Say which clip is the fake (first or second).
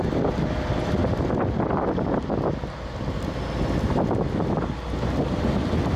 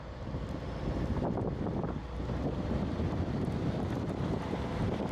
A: second